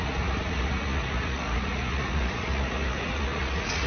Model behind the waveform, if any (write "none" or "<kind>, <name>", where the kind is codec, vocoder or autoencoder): vocoder, Vocos